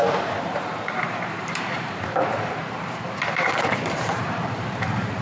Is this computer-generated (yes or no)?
yes